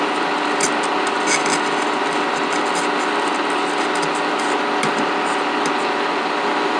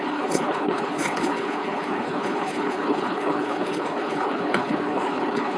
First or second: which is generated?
second